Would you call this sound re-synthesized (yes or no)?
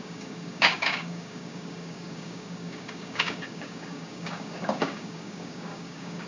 yes